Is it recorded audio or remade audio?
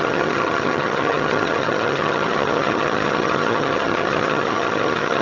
remade